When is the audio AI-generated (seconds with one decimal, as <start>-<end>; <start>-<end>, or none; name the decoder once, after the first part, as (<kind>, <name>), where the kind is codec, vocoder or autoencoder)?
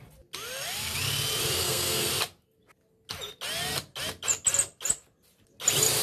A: 1.6-2.1 (codec, SNAC)